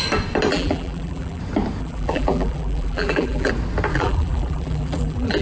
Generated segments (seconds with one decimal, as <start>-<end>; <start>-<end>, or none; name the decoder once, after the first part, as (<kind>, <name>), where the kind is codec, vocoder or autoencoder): 0.5-1.4 (vocoder, BigVGAN v2); 1.8-3.5; 3.9-5.4